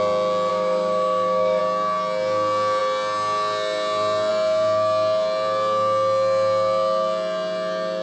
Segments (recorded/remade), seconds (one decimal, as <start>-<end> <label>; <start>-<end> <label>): 0.0-0.5 recorded; 0.5-1.6 remade; 1.6-8.0 recorded

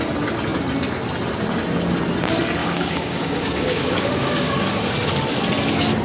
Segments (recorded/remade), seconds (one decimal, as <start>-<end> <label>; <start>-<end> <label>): 0.0-2.6 recorded; 2.6-4.5 remade; 4.5-6.0 recorded